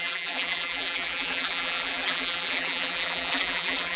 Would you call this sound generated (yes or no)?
yes